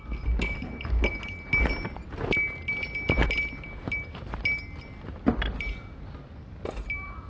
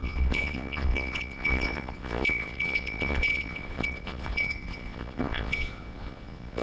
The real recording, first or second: first